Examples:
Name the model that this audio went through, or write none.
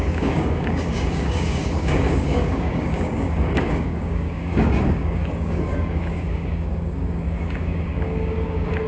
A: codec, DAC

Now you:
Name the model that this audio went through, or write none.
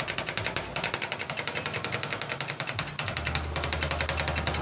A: none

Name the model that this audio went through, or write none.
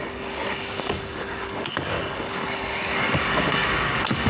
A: codec, DAC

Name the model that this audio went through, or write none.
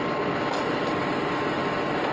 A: none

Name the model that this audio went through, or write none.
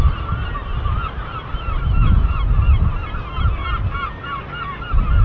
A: none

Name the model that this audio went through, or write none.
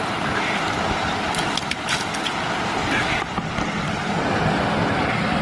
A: none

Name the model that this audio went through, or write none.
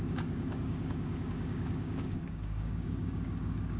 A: codec, DAC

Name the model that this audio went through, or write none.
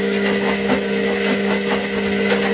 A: none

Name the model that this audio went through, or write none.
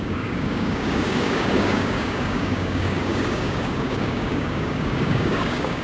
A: codec, DAC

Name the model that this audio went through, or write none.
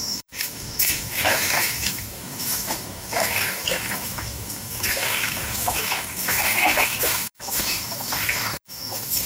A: codec, DAC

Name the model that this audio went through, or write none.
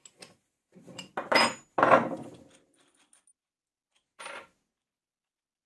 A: none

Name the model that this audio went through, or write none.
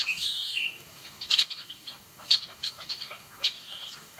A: codec, DAC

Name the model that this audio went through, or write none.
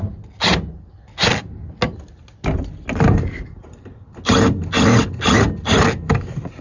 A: none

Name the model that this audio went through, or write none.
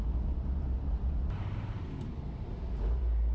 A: none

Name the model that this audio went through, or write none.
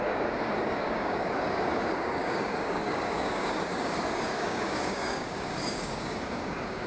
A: codec, DAC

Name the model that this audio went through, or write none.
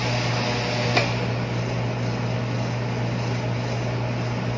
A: none